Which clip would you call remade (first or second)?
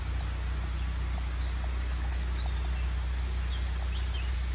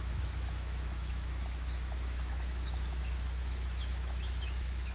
second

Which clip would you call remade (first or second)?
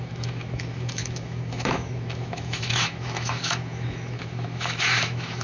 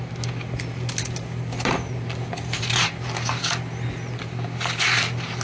first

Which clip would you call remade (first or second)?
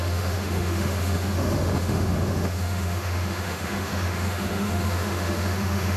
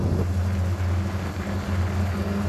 first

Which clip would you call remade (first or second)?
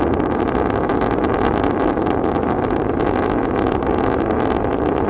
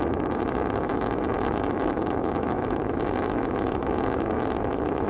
second